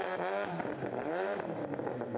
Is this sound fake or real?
fake